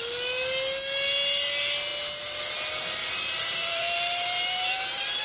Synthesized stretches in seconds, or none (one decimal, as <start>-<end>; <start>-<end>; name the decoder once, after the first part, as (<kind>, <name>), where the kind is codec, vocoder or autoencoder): 3.0-5.2 (vocoder, BigVGAN v2)